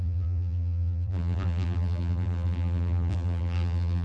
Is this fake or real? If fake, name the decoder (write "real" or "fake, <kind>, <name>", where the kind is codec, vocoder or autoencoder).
fake, vocoder, BigVGAN v2